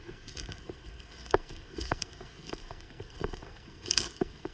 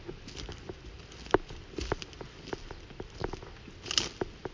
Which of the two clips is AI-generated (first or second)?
first